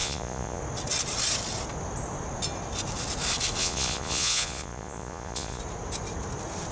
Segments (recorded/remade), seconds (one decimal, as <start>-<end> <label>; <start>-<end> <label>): 0.0-0.6 remade; 0.6-3.6 recorded; 3.6-5.6 remade; 5.6-6.7 recorded